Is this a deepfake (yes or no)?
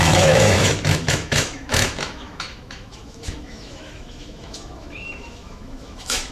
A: yes